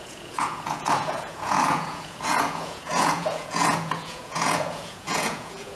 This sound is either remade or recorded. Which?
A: remade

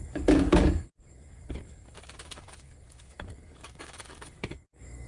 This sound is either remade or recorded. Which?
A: remade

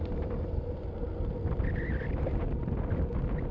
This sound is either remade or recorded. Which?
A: recorded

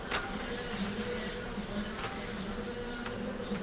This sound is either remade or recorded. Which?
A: recorded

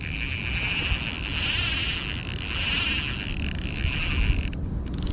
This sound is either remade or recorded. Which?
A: recorded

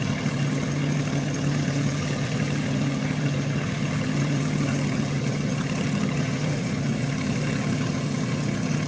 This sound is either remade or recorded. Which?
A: remade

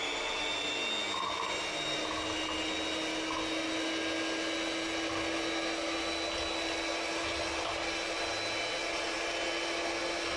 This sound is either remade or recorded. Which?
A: recorded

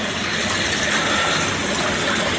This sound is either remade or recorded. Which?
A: recorded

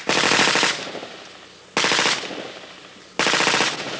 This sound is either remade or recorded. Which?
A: recorded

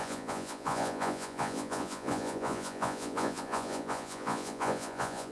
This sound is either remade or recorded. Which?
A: remade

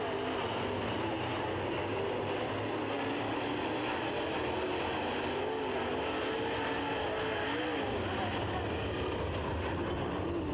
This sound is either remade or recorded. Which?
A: recorded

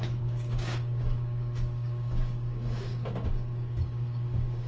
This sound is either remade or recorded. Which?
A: remade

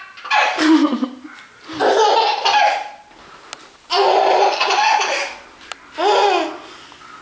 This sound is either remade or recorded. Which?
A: recorded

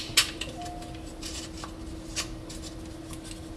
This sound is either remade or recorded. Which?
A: recorded